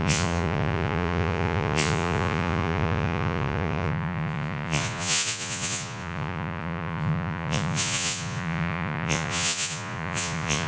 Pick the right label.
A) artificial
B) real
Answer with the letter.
A